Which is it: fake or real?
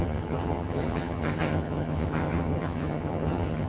fake